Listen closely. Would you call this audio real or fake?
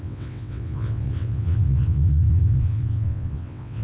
fake